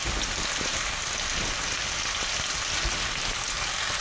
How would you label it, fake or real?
real